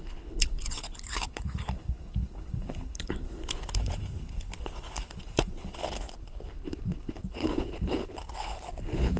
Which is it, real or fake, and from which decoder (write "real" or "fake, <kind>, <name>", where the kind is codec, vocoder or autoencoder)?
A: fake, codec, HILCodec